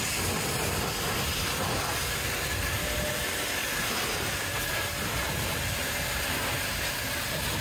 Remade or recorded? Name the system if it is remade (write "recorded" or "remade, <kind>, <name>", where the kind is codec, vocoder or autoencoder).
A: recorded